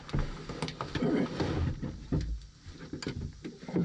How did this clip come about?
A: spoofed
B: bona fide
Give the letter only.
B